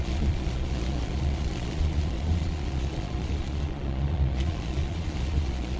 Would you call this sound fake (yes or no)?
yes